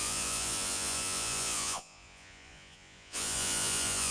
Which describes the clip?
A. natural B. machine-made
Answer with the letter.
B